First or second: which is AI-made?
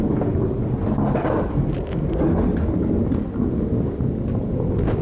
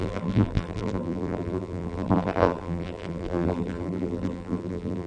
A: second